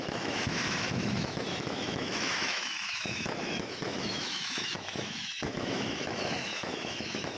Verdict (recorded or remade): remade